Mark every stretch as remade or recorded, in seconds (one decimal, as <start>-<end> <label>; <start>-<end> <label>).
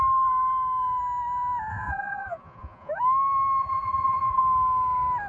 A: 0.0-1.7 recorded; 1.7-2.9 remade; 2.9-3.6 recorded; 3.6-4.4 remade; 4.4-5.3 recorded